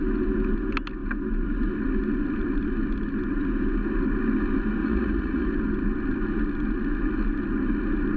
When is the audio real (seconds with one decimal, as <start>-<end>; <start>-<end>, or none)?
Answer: 0.0-4.8; 5.5-8.2